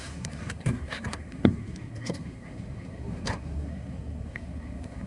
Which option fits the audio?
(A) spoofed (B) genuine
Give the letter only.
A